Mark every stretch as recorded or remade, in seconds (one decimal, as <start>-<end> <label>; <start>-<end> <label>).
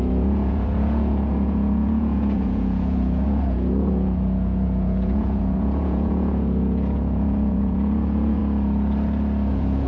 0.0-8.4 remade; 8.4-9.5 recorded; 9.5-9.9 remade